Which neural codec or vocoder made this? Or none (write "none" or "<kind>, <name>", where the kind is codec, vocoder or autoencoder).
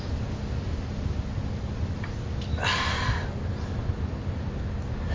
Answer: none